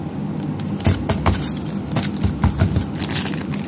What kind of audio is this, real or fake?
real